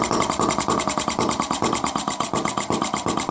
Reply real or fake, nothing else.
real